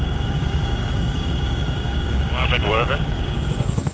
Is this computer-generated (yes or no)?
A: yes